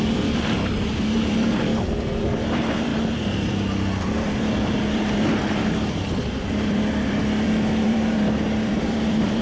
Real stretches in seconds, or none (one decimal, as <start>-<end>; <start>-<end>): none